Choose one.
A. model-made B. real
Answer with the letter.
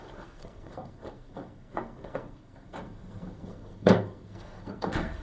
A